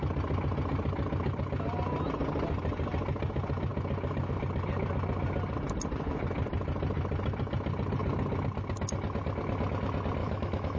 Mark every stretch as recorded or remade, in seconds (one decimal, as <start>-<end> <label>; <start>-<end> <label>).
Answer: 0.0-10.2 recorded; 10.2-10.8 remade